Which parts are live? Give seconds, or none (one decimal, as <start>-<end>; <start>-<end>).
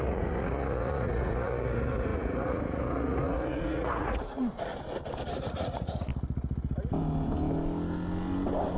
4.7-5.3; 6.1-8.8